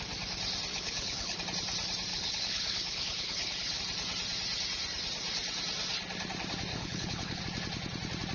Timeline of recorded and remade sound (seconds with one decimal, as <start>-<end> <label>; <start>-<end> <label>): 0.0-0.7 recorded; 0.7-1.4 remade; 1.4-2.1 recorded; 2.1-3.8 remade; 3.8-6.7 recorded; 6.7-7.4 remade; 7.4-8.3 recorded